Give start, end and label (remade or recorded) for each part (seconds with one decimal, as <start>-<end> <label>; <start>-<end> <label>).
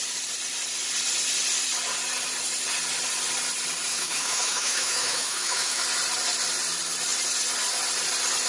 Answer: 0.0-3.9 recorded; 3.9-5.8 remade; 5.8-8.5 recorded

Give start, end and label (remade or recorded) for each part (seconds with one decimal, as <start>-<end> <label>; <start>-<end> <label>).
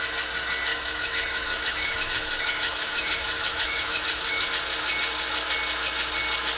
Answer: 0.0-0.7 recorded; 0.7-4.5 remade; 4.5-6.6 recorded